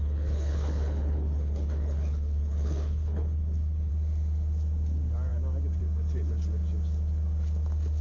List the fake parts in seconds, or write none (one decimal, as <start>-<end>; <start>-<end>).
0.0-3.9